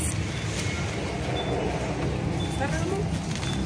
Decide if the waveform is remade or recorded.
recorded